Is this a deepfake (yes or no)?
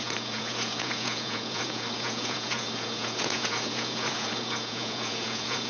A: yes